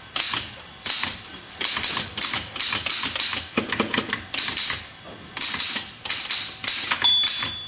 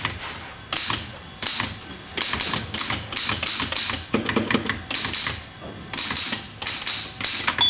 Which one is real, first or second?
second